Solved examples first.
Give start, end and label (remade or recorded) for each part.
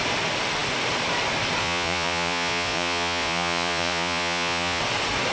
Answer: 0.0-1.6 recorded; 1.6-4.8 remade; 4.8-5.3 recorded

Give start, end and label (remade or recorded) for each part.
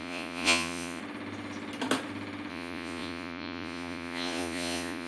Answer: 0.0-1.0 remade; 1.0-2.5 recorded; 2.5-5.1 remade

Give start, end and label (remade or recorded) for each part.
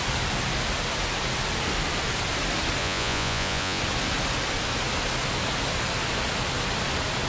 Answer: 0.0-2.8 recorded; 2.8-3.8 remade; 3.8-7.3 recorded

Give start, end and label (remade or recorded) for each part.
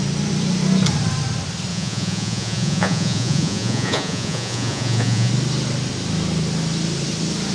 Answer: 0.0-1.7 recorded; 1.7-5.3 remade; 5.3-7.5 recorded